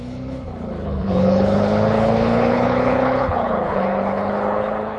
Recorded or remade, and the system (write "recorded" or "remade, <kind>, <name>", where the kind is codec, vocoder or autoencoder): remade, codec, HILCodec